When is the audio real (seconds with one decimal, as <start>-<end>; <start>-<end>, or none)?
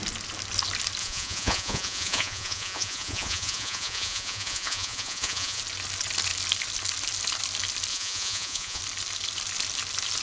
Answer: 0.0-1.0; 5.6-7.9; 8.8-10.2